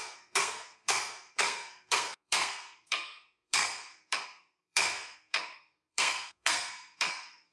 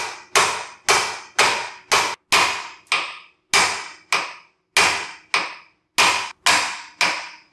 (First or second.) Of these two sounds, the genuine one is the second